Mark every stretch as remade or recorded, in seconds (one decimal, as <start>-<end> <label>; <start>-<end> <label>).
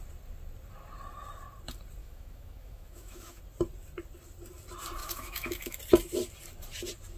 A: 0.0-2.0 recorded; 2.0-3.4 remade; 3.4-5.0 recorded; 5.0-5.8 remade; 5.8-7.2 recorded